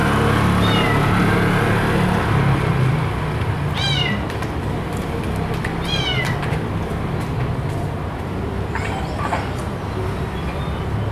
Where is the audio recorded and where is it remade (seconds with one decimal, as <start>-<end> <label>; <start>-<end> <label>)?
0.0-11.1 recorded